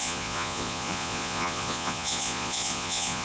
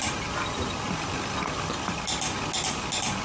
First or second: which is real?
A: second